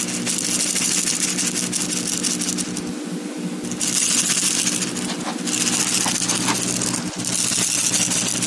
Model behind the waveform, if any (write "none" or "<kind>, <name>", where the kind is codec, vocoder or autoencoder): none